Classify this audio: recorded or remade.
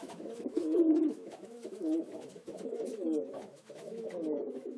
remade